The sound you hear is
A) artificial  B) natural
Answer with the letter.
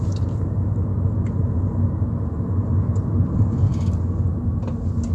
B